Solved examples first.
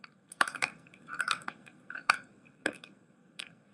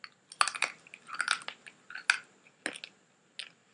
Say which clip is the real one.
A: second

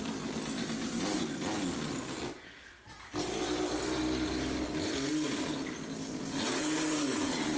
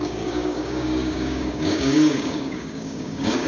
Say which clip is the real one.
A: first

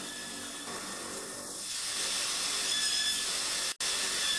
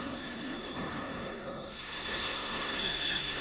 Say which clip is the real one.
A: first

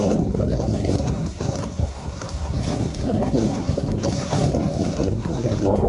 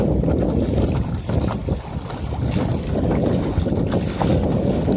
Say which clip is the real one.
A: second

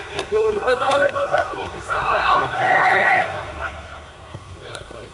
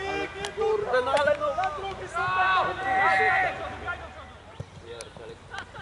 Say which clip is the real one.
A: second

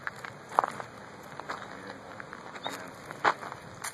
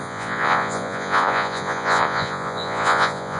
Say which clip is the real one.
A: first